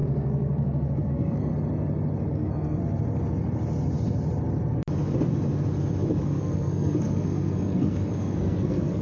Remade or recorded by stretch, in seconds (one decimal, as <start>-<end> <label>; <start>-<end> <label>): 0.0-1.5 remade; 1.5-2.3 recorded; 2.3-2.8 remade; 2.8-6.2 recorded; 6.2-9.0 remade